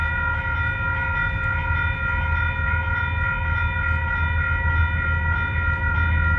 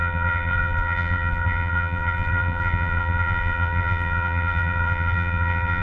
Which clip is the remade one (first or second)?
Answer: second